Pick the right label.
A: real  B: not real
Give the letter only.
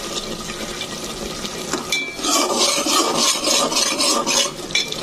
A